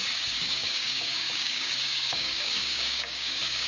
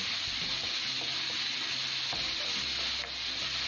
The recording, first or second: second